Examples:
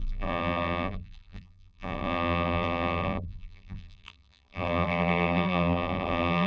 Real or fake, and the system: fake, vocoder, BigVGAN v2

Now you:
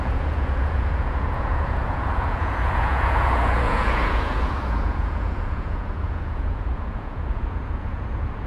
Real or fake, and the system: fake, vocoder, Vocos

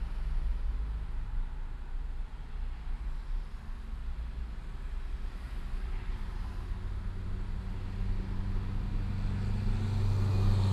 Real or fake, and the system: real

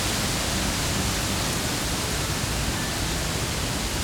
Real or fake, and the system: real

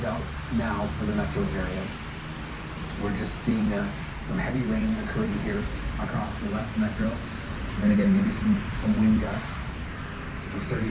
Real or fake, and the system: fake, vocoder, BigVGAN v2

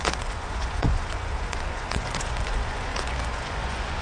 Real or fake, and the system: fake, vocoder, Vocos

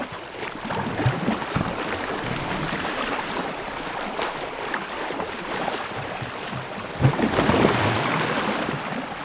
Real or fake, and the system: fake, vocoder, BigVGAN v2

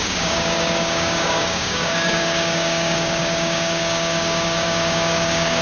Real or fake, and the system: fake, codec, DAC